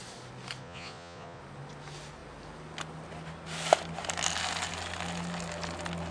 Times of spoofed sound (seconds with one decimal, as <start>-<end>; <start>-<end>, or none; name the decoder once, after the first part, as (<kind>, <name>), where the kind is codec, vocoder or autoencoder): 0.6-1.4 (vocoder, Vocos)